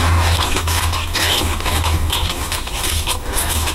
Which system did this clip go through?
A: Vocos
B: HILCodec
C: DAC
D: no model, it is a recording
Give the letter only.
C